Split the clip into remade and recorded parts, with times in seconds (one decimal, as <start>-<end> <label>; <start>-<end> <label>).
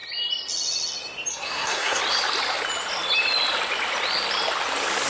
0.0-1.3 recorded; 1.3-2.0 remade; 2.0-5.1 recorded